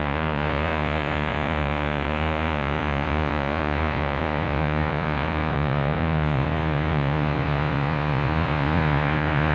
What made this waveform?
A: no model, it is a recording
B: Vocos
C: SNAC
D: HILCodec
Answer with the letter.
B